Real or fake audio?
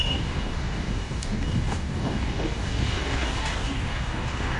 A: fake